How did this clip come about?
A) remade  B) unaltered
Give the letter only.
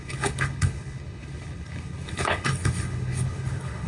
A